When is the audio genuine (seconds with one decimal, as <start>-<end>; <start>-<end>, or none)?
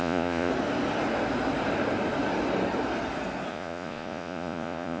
0.5-3.5